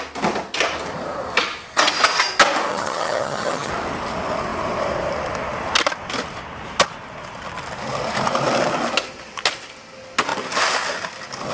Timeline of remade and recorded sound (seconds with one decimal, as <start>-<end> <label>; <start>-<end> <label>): 0.0-2.7 recorded; 2.7-3.7 remade; 3.7-11.5 recorded